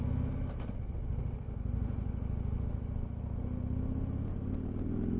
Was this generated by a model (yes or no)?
no